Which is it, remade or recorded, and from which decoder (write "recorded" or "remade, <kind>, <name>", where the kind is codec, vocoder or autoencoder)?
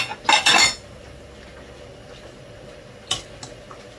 recorded